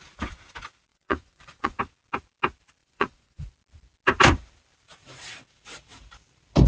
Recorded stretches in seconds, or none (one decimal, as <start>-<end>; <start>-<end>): 0.0-0.9; 1.8-2.8; 3.5-6.7